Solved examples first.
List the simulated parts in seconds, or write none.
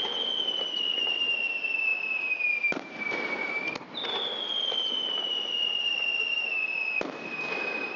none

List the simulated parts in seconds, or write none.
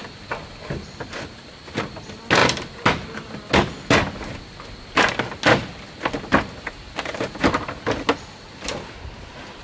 none